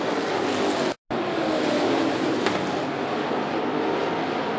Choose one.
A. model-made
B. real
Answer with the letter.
B